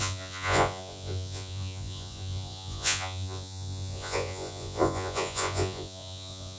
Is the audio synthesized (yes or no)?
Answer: yes